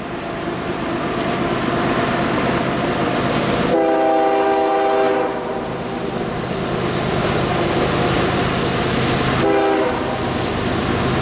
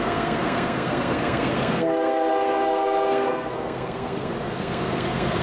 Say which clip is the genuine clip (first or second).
first